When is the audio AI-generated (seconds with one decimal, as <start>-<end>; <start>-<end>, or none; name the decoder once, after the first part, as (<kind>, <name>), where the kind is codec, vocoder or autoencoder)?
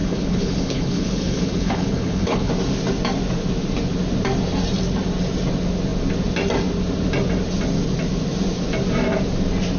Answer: 0.0-2.5 (codec, HILCodec)